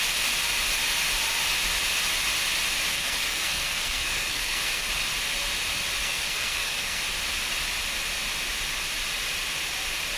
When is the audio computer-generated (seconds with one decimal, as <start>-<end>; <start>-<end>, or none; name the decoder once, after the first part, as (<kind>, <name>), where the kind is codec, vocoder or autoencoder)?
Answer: 2.9-4.9 (codec, SNAC); 6.0-7.0